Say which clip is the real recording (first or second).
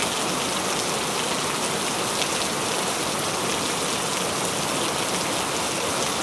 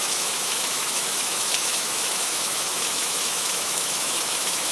first